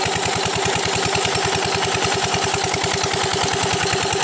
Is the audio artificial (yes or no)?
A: no